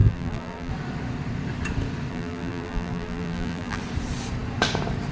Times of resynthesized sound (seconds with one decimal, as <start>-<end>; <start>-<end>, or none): 0.0-0.7; 2.1-3.8

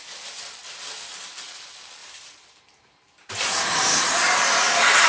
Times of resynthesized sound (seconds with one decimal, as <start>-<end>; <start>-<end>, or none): 2.0-5.1